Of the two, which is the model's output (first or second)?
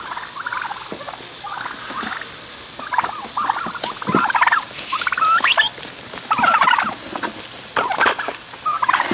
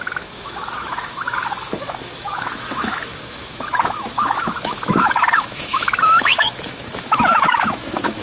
second